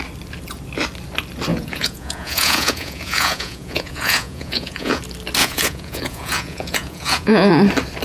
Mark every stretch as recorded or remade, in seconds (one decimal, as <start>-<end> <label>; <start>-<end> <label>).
0.0-1.5 recorded; 1.5-5.0 remade; 5.0-5.4 recorded; 5.4-7.5 remade; 7.5-8.0 recorded